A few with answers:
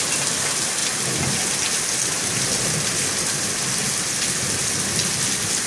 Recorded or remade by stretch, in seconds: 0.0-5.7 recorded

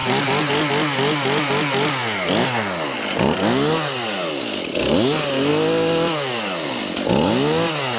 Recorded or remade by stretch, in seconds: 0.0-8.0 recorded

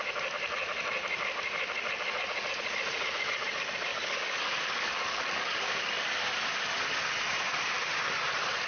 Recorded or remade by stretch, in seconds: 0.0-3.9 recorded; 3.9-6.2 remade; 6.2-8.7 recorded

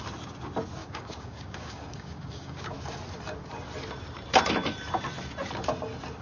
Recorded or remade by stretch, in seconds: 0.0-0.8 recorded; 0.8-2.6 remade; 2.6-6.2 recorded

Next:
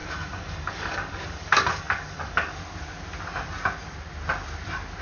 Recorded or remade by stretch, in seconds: 0.0-2.6 remade; 2.6-5.0 recorded

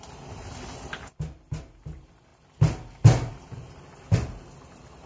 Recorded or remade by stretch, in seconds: 0.0-5.1 recorded

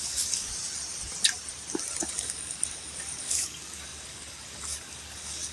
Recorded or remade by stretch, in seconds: 0.0-0.5 remade; 0.5-2.1 recorded; 2.1-5.5 remade

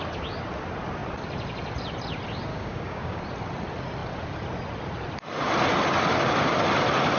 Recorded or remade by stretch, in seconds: 0.0-2.5 recorded; 2.5-3.2 remade; 3.2-7.2 recorded